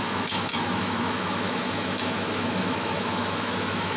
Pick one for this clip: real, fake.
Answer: fake